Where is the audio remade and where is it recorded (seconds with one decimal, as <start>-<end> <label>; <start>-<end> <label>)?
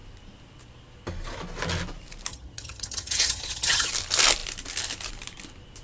0.0-2.3 recorded; 2.3-3.9 remade; 3.9-5.8 recorded